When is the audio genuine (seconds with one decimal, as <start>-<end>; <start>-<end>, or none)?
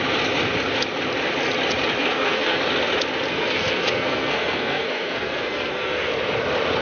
0.0-2.0; 2.6-3.3; 6.1-6.8